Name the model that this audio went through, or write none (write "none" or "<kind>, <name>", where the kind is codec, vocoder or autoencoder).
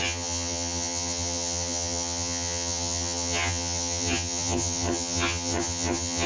vocoder, HiFi-GAN